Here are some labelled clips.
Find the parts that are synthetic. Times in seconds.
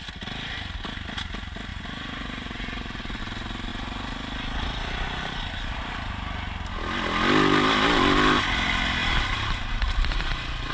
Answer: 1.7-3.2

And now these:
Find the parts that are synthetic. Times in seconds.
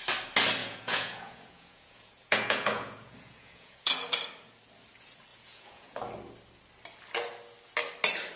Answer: 0.6-3.9; 5.3-6.0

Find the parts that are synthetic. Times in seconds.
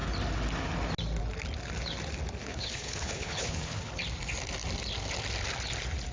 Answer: 2.4-3.9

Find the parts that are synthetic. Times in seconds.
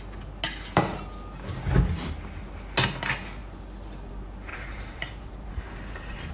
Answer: 4.5-6.3